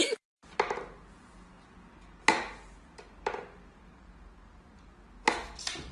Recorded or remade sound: recorded